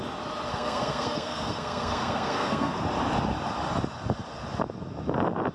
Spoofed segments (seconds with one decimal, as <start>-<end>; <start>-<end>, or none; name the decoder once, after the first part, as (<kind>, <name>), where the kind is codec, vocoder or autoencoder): 0.5-2.8 (codec, SNAC)